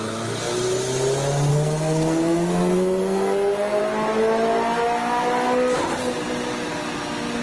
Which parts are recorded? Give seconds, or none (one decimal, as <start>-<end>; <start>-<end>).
0.0-1.5; 3.8-7.4